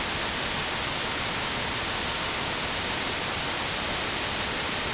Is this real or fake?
real